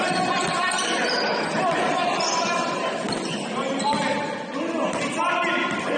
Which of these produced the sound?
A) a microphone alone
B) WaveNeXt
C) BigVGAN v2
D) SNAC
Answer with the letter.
A